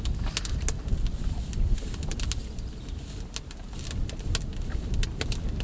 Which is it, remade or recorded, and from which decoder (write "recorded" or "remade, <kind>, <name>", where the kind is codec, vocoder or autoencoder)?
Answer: recorded